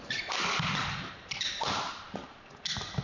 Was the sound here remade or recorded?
recorded